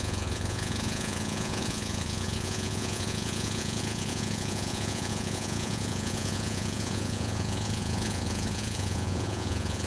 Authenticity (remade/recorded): remade